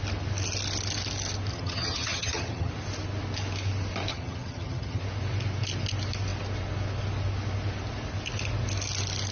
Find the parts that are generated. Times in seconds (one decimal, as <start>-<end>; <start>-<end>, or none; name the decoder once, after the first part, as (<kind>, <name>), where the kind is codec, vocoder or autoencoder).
1.5-2.7 (vocoder, HiFi-GAN); 4.1-5.0